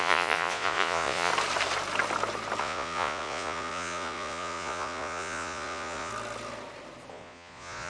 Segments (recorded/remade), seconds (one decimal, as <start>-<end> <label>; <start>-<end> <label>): 0.0-1.3 remade; 1.3-2.6 recorded; 2.6-6.1 remade; 6.1-7.1 recorded; 7.1-7.9 remade